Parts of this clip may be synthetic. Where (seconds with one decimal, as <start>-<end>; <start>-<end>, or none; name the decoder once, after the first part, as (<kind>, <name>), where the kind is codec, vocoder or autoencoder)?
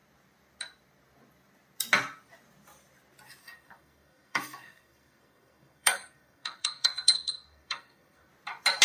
3.4-8.3 (codec, SNAC)